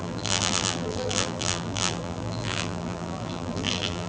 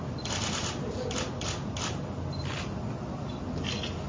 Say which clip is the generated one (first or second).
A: first